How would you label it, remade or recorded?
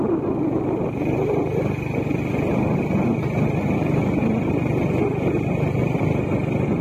recorded